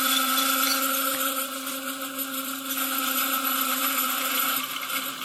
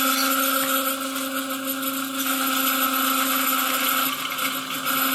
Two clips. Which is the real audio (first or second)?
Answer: second